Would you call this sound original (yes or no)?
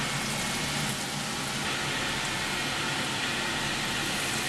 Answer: yes